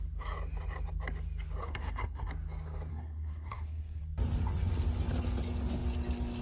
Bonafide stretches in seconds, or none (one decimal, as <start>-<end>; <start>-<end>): 0.0-1.6; 2.3-2.9; 4.0-6.4